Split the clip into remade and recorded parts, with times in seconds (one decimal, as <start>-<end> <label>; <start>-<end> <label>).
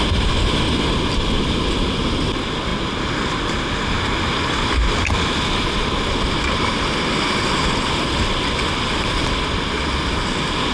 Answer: 0.0-10.7 recorded